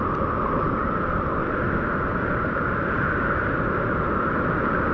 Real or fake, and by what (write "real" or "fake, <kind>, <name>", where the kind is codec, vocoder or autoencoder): real